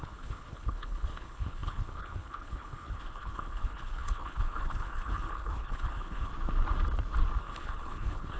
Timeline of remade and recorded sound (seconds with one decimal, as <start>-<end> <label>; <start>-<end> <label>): 0.0-6.3 remade; 6.3-7.4 recorded; 7.4-8.4 remade